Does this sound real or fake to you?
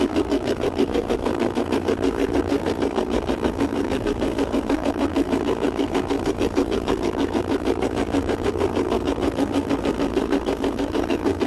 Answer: fake